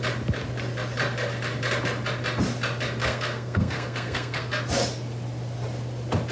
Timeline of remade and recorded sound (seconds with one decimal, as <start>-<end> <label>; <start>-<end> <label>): 0.0-3.0 recorded; 3.0-4.6 remade; 4.6-6.3 recorded